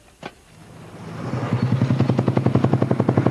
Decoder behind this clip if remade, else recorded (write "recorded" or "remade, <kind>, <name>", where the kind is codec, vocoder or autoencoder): recorded